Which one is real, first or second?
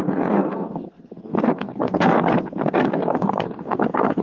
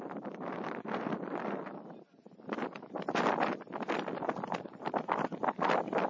second